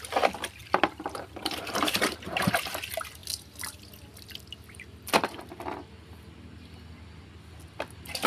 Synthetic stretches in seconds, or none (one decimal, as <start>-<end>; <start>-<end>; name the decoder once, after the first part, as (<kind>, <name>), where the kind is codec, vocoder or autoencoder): 0.6-2.7 (vocoder, BigVGAN v2)